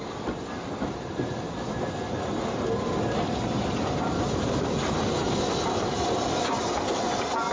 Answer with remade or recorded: recorded